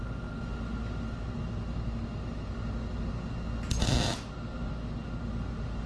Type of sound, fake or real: real